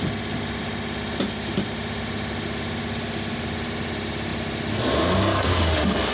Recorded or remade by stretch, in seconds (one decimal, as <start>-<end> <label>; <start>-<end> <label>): 0.0-6.1 recorded